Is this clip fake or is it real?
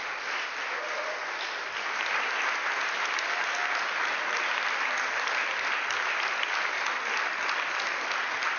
real